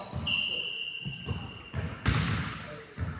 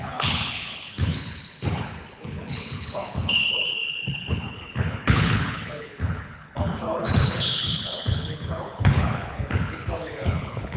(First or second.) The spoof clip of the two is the second